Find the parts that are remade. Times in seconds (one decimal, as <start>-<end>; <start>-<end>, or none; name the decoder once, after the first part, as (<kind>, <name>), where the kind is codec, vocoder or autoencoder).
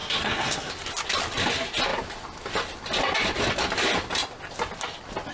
0.0-0.7 (codec, SNAC)